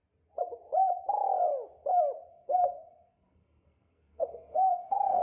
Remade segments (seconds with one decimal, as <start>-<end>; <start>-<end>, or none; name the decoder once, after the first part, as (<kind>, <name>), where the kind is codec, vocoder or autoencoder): 2.3-5.2 (codec, SNAC)